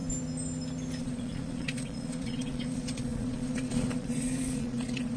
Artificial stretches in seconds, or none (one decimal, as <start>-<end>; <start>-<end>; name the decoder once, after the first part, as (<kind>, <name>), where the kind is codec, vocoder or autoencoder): 1.0-5.2 (vocoder, Vocos)

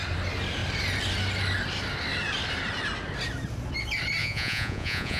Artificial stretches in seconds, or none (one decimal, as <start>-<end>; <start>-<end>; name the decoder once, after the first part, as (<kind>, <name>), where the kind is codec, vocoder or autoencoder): 4.2-5.2 (vocoder, Vocos)

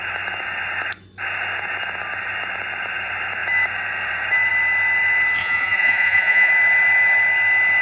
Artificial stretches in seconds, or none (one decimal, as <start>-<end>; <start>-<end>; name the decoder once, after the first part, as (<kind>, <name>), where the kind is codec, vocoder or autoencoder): 5.4-6.5 (vocoder, Vocos)

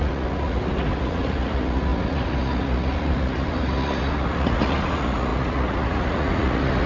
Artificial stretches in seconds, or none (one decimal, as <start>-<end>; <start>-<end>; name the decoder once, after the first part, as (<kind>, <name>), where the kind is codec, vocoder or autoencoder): 0.0-6.9 (vocoder, Vocos)